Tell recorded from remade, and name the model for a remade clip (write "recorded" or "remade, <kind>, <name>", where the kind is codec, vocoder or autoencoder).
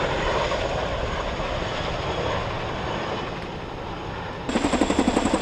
recorded